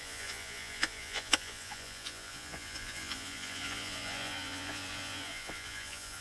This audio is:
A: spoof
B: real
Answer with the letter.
A